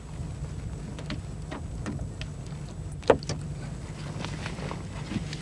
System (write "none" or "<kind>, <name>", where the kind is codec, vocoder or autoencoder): none